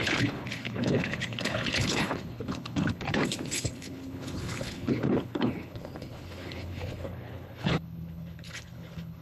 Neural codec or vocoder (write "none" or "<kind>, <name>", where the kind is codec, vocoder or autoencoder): codec, HILCodec